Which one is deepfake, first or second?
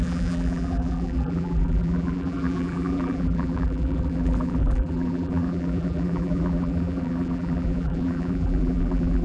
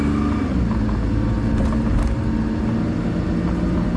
first